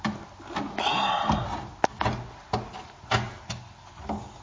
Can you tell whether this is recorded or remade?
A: recorded